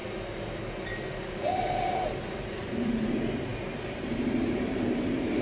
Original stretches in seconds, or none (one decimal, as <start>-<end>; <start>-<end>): 0.0-0.9